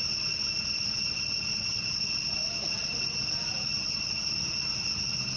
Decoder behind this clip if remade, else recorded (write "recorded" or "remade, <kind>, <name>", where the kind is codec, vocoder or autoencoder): recorded